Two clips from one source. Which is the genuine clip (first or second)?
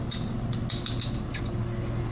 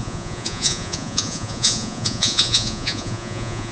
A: first